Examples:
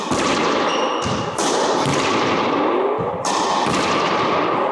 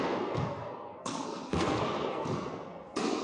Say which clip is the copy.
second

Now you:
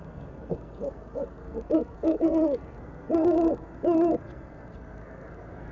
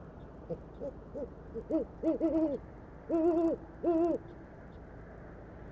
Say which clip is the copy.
first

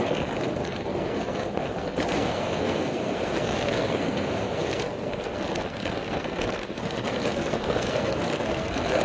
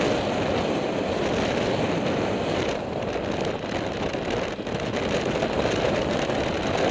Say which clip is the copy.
first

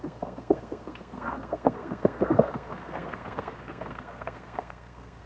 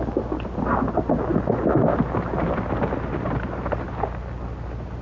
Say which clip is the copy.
first